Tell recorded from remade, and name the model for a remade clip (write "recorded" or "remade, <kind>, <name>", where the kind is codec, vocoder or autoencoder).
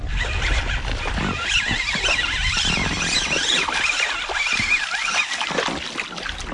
recorded